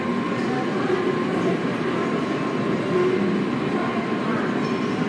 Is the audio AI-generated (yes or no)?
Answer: no